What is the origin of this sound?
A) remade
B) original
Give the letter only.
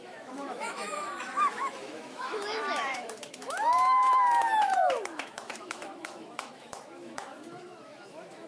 A